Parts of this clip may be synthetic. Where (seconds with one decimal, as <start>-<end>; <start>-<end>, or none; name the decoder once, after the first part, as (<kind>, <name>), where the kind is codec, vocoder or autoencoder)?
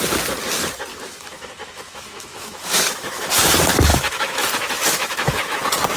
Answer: 0.9-3.3 (autoencoder, DAC-VAE); 3.9-5.6